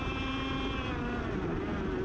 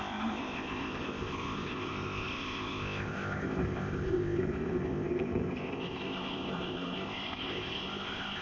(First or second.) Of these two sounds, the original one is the first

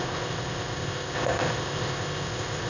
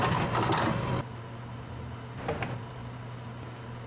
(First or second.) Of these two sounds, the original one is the second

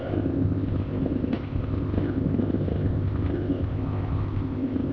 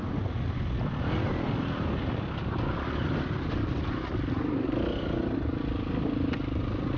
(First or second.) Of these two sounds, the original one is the second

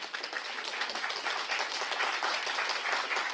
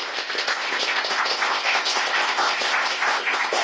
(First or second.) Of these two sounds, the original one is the first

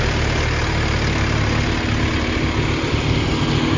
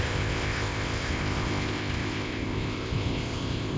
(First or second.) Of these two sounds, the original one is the first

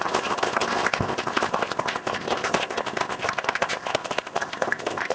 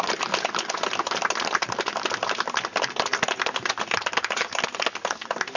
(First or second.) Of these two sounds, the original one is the second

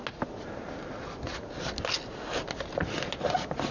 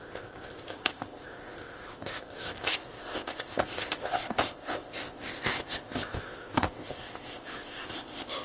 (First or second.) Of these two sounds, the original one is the first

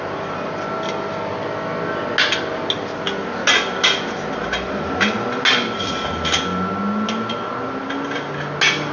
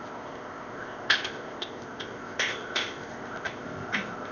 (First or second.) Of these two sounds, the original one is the first